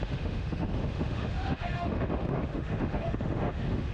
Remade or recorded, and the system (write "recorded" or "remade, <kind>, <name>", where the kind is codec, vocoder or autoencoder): remade, autoencoder, DAC-VAE